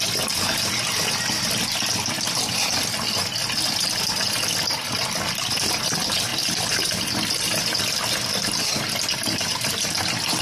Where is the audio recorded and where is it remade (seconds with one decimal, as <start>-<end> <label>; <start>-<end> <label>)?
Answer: 0.0-6.3 recorded; 6.3-7.8 remade; 7.8-10.4 recorded